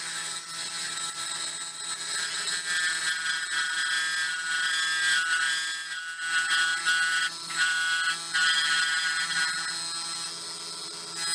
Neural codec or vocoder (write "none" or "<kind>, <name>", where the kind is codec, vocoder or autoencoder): none